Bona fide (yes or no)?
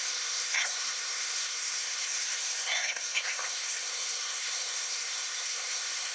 no